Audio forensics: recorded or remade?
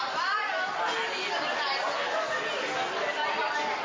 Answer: recorded